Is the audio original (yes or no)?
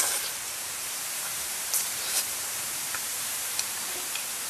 no